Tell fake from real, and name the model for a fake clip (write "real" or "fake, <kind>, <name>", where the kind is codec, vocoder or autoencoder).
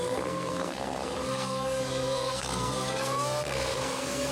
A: fake, codec, SNAC